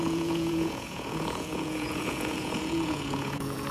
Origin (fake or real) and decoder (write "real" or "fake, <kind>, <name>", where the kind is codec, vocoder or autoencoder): fake, vocoder, Vocos